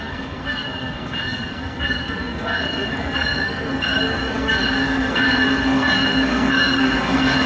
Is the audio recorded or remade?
remade